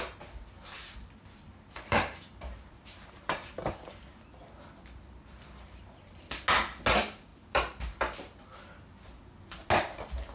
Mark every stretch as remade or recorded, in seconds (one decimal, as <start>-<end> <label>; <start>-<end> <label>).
0.0-1.5 recorded; 1.5-4.2 remade; 4.2-10.3 recorded